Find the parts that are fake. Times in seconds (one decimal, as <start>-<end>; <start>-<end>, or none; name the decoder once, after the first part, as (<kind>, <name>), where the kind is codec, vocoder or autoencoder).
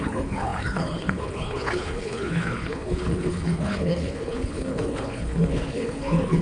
0.0-6.4 (codec, HILCodec)